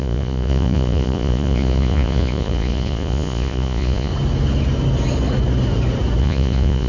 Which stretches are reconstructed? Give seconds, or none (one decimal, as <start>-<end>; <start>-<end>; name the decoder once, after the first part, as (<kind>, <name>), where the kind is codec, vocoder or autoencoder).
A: 0.0-4.1 (vocoder, Vocos); 6.2-6.9